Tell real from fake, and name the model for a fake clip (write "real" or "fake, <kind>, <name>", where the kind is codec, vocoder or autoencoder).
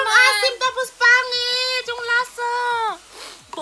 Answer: real